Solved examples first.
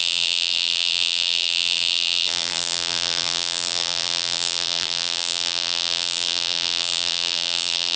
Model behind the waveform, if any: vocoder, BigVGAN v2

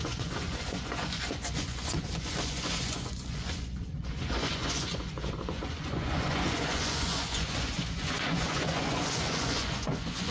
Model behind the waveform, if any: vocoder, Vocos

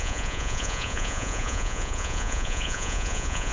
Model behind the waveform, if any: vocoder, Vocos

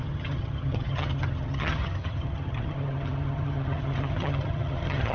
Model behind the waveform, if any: vocoder, HiFi-GAN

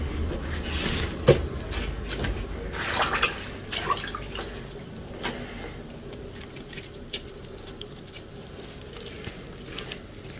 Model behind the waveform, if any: none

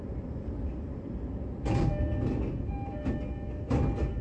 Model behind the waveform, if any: none